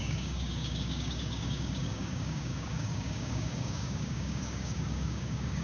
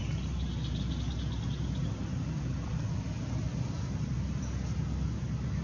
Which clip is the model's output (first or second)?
first